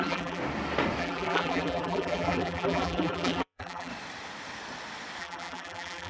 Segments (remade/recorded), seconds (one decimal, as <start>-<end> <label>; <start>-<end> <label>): 0.0-0.4 remade; 0.4-1.0 recorded; 1.0-3.9 remade; 3.9-5.2 recorded; 5.2-6.1 remade